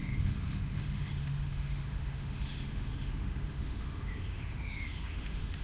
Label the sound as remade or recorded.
remade